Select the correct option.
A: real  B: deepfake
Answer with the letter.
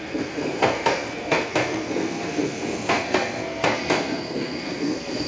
B